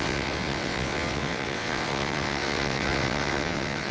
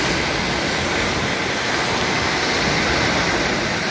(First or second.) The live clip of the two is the second